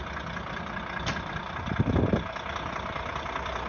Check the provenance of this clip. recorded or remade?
recorded